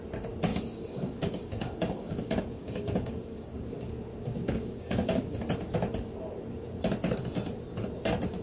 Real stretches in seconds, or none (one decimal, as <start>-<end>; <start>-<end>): 0.0-0.5; 3.9-4.3; 5.4-8.4